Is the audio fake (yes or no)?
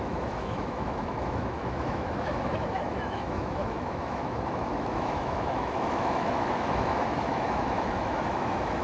yes